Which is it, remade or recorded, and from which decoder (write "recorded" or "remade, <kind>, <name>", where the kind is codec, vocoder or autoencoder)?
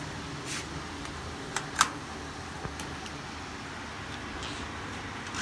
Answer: recorded